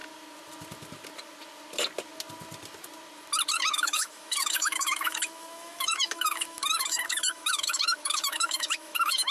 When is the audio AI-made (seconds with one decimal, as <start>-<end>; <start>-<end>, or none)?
3.5-9.3